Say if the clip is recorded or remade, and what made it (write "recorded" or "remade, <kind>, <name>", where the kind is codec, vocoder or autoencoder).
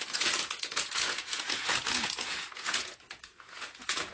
remade, vocoder, Vocos